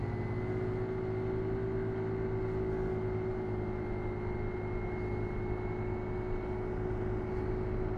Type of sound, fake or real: real